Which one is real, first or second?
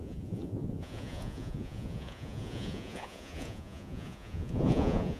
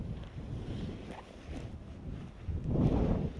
second